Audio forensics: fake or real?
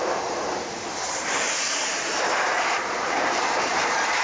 fake